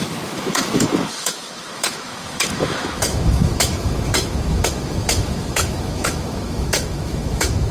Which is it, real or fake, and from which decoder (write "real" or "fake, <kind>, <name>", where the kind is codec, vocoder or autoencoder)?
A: fake, autoencoder, DAC-VAE